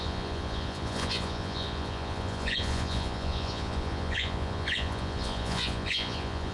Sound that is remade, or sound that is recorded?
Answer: remade